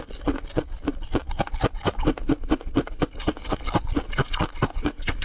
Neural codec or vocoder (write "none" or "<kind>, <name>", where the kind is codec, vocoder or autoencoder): none